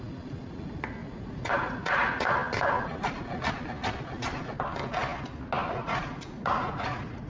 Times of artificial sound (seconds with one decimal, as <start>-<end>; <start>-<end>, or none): 1.0-2.3; 5.8-7.3